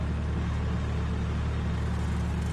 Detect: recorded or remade recorded